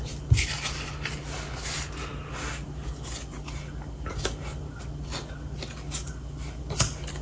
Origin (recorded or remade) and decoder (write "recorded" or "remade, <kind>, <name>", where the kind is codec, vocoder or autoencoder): recorded